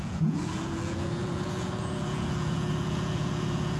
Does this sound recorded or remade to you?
remade